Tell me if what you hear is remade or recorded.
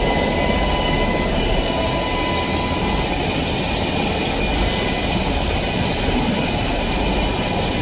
recorded